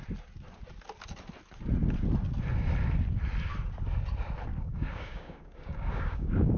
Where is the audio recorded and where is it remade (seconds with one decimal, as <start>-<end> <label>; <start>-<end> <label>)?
0.0-4.5 recorded; 4.5-6.6 remade